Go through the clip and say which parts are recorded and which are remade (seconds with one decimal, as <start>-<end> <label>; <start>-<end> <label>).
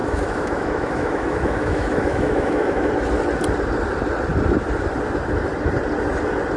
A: 0.0-2.9 remade; 2.9-6.6 recorded